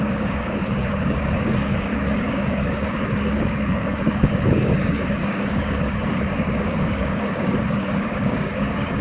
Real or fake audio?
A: fake